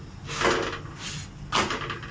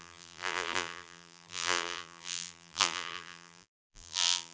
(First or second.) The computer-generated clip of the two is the second